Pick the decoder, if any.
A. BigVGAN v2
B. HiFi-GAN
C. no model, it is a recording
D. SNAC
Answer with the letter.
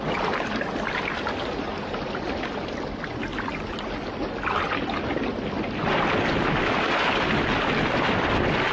C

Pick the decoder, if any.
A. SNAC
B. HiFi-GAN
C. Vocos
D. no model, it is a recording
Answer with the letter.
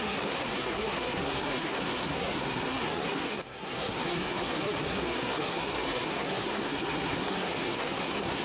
A